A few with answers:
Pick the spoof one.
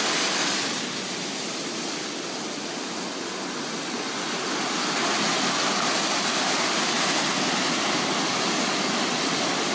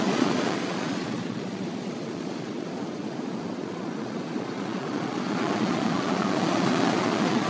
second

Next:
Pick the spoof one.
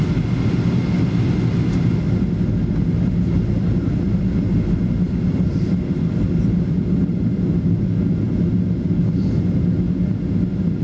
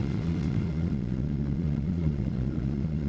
second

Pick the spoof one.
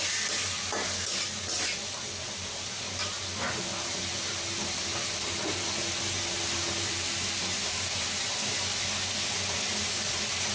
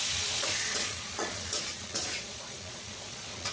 second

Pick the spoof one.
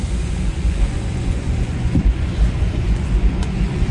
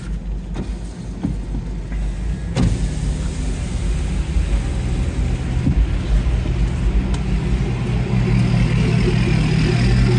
first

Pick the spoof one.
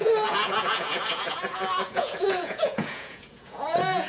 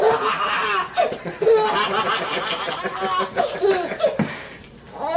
first